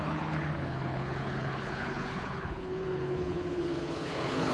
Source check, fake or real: fake